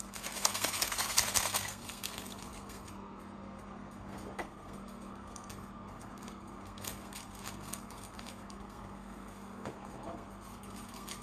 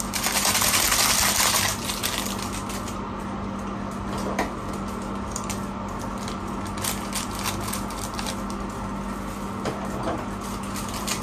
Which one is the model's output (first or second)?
first